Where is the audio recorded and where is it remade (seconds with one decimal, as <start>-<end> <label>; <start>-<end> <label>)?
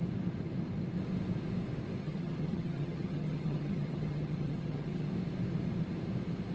0.0-2.0 recorded; 2.0-5.1 remade; 5.1-6.5 recorded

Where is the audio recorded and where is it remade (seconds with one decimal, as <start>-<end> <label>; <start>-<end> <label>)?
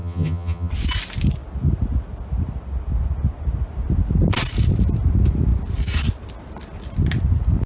0.0-0.7 remade; 0.7-7.7 recorded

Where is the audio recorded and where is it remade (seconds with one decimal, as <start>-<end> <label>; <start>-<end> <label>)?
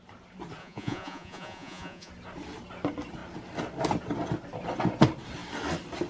0.0-0.6 recorded; 0.6-2.1 remade; 2.1-6.1 recorded